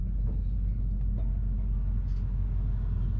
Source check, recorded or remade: recorded